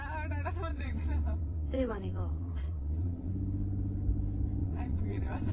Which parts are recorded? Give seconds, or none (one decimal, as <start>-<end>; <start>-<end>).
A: 0.0-0.7; 3.3-4.6